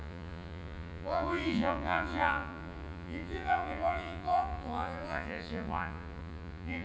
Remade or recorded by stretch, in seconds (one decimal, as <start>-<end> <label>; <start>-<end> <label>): 0.0-6.8 remade

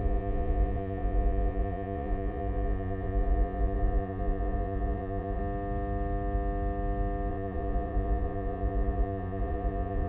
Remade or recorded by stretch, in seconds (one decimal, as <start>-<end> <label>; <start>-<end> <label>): 0.0-5.4 remade; 5.4-7.3 recorded; 7.3-10.1 remade

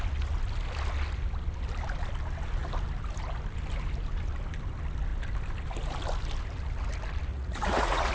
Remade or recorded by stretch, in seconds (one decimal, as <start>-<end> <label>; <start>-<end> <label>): 0.0-7.3 recorded; 7.3-8.1 remade